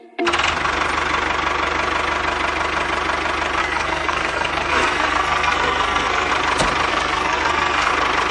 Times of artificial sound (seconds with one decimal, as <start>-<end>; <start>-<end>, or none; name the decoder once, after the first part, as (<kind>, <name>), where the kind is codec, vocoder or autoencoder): 3.6-6.3 (codec, SNAC); 6.9-7.9